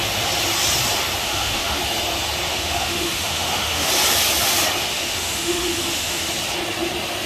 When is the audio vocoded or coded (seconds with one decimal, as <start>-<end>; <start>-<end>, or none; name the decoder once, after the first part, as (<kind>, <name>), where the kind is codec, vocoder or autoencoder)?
1.2-1.8 (autoencoder, DAC-VAE); 2.5-3.9; 4.8-6.3